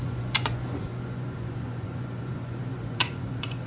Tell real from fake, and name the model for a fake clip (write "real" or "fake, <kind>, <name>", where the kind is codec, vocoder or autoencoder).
fake, vocoder, Vocos